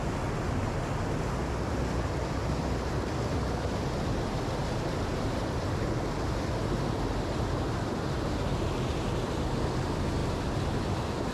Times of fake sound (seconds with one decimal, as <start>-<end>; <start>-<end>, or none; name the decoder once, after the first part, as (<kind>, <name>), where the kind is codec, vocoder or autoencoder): none